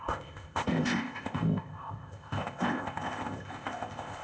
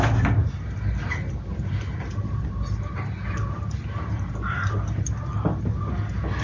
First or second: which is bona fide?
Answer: second